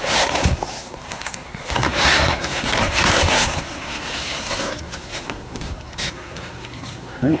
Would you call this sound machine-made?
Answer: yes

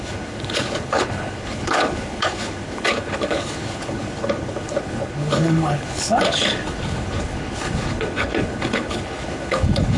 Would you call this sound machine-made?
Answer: yes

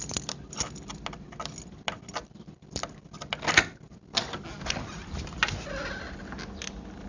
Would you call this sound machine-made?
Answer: no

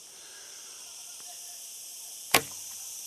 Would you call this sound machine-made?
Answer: yes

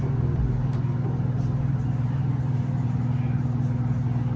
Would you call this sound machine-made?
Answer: no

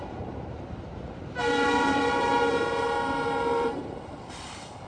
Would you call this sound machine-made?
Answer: yes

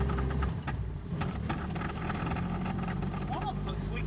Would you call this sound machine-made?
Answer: yes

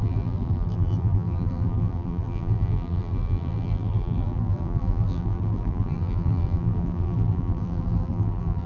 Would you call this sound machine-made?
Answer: yes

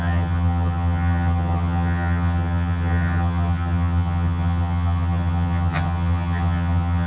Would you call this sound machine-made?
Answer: yes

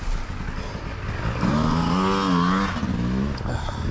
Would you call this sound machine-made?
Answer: no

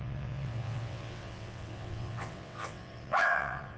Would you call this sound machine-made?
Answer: yes